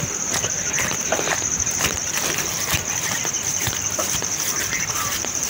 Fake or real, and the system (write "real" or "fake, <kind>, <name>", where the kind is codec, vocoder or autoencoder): fake, vocoder, BigVGAN v2